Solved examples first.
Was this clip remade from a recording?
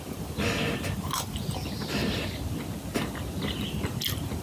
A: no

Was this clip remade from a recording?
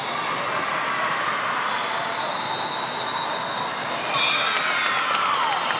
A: no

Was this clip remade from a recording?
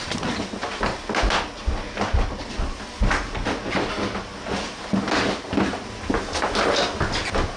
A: no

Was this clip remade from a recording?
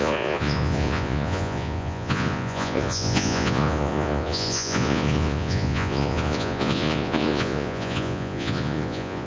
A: yes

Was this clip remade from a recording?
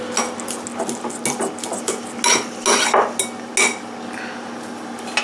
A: no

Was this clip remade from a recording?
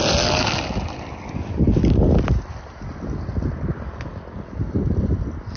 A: no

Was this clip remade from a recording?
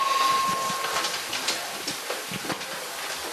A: no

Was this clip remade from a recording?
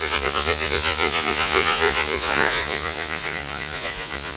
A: yes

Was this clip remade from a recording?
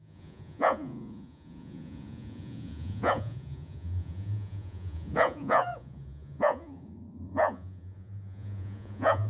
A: yes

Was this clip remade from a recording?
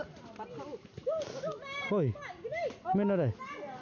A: no